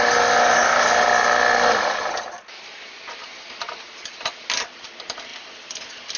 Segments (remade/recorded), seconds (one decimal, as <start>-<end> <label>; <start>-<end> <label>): 0.0-6.2 recorded